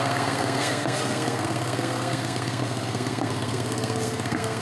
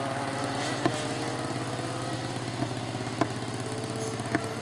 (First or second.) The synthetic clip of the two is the first